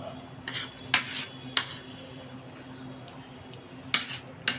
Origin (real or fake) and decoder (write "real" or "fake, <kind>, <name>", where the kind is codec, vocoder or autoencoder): real